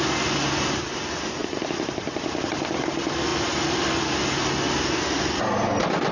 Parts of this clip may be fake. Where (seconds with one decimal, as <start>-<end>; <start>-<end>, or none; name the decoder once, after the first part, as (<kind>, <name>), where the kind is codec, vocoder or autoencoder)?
3.3-5.2 (vocoder, BigVGAN v2)